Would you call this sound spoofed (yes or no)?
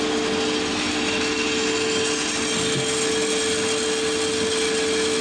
no